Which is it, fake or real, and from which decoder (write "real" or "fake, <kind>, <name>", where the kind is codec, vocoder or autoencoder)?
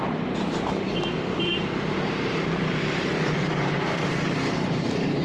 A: fake, vocoder, BigVGAN v2